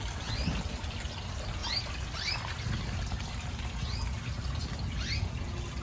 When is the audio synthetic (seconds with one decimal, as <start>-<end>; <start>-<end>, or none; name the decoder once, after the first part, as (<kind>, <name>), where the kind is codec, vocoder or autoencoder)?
1.6-3.6 (vocoder, BigVGAN v2)